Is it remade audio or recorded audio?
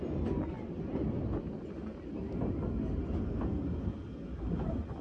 recorded